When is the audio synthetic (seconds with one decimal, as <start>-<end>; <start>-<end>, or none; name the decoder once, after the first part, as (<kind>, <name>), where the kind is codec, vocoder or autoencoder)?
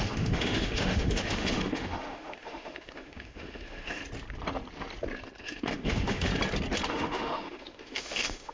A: 0.0-4.0 (autoencoder, DAC-VAE); 5.4-6.3; 6.9-8.5